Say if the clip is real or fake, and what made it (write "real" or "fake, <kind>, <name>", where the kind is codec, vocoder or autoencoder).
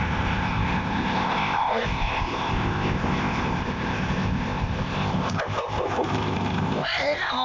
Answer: fake, codec, ZipCodec